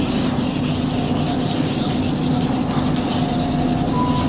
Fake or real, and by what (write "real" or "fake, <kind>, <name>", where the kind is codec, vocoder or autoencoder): real